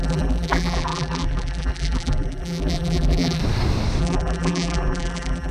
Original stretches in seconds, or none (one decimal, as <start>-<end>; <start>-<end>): 3.4-4.0